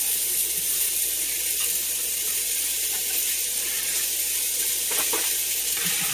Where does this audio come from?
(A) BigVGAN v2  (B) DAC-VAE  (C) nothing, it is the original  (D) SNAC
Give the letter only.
C